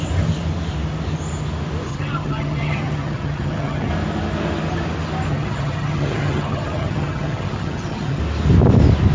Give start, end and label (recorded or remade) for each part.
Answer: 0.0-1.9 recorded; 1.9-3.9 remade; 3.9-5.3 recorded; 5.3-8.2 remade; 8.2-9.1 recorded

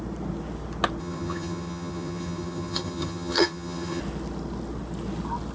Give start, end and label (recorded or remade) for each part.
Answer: 0.0-1.0 recorded; 1.0-4.0 remade; 4.0-5.5 recorded

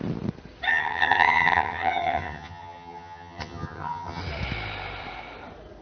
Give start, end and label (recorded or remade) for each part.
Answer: 0.0-0.7 recorded; 0.7-4.2 remade; 4.2-5.8 recorded

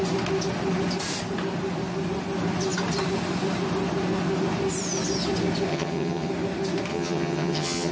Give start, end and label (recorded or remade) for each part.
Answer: 0.0-5.7 recorded; 5.7-6.3 remade; 6.3-6.9 recorded; 6.9-7.9 remade

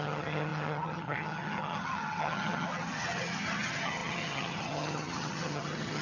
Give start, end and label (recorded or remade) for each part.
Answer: 0.0-6.0 remade

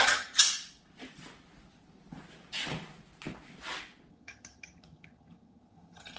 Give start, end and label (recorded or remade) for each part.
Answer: 0.0-0.4 remade; 0.4-4.1 recorded; 4.1-6.2 remade